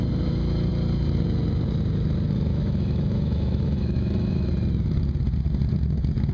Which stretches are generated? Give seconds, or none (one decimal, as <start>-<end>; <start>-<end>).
2.5-4.5